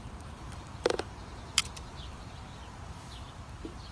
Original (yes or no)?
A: no